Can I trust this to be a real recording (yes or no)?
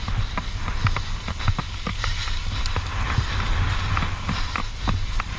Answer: yes